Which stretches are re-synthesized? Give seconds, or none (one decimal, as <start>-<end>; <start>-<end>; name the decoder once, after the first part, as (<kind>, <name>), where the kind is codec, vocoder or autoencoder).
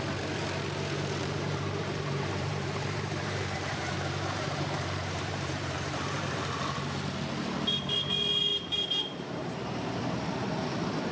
1.2-6.4 (vocoder, BigVGAN v2); 8.5-10.0